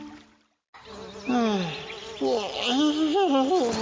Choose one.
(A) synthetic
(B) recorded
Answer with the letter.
B